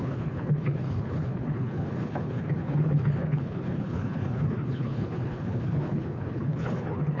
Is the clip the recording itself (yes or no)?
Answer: no